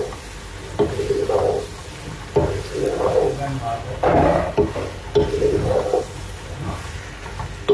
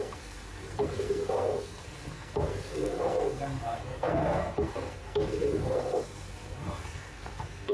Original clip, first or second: first